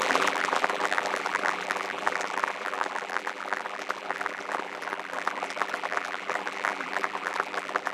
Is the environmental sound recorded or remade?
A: remade